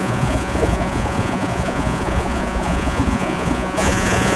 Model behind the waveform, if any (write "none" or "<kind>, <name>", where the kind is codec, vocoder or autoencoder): vocoder, Vocos